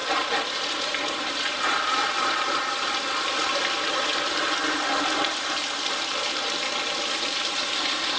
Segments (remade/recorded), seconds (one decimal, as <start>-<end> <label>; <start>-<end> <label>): 0.0-2.6 remade; 2.6-8.2 recorded